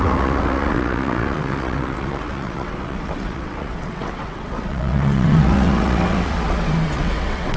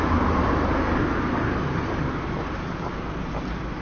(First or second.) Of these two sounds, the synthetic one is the first